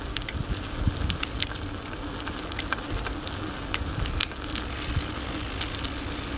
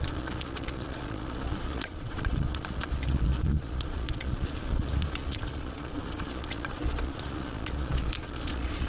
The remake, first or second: second